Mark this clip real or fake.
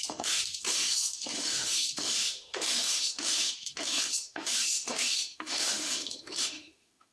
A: fake